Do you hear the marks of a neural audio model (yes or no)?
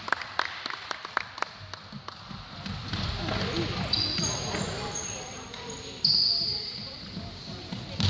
no